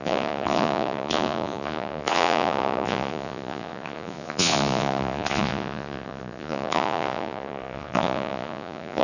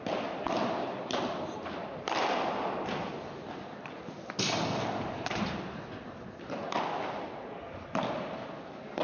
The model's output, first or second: first